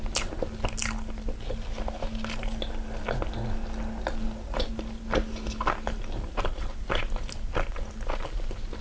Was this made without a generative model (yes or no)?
yes